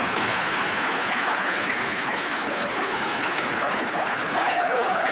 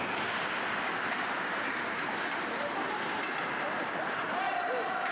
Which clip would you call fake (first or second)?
first